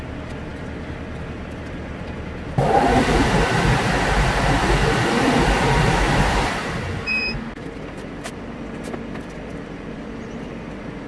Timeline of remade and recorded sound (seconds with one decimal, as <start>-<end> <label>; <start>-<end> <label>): 0.0-11.1 remade